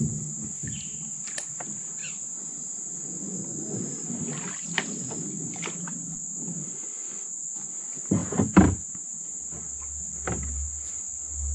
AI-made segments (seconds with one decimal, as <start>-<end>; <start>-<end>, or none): 2.0-2.8